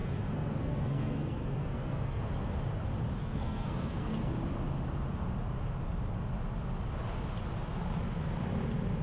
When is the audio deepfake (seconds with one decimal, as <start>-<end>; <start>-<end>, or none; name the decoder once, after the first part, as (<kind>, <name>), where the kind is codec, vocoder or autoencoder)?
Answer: 0.0-2.2 (codec, SNAC); 3.2-4.3